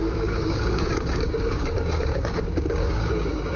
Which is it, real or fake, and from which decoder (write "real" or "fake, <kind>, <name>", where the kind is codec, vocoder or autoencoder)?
fake, codec, DAC